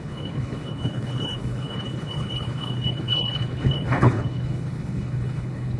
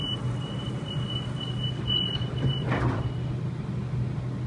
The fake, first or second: first